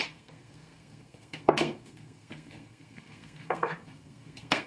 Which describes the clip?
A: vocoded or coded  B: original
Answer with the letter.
A